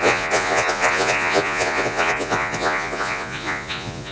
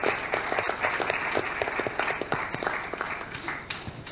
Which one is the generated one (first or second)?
first